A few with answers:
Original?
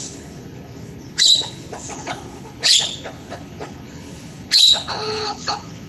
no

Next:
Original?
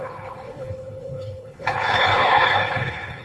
no